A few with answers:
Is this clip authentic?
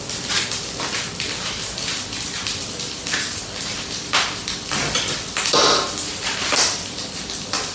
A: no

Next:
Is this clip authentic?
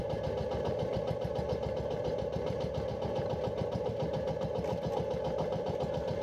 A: yes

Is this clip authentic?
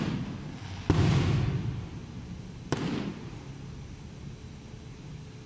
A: yes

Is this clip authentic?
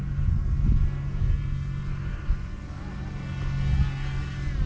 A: yes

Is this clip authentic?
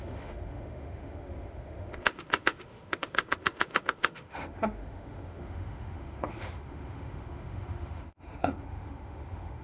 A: no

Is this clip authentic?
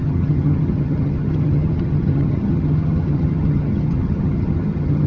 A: no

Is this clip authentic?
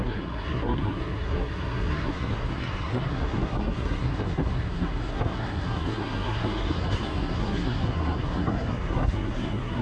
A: no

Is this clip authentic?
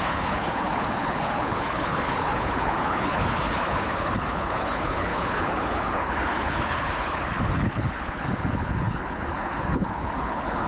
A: no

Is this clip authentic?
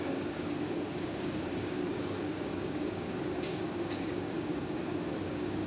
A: no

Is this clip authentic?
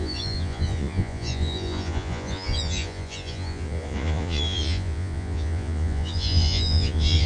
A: no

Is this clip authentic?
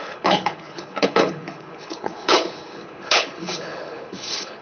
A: no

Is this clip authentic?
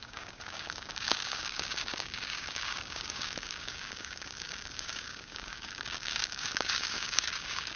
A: no